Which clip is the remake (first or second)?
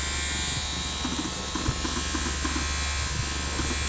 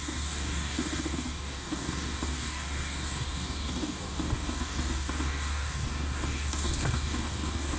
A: second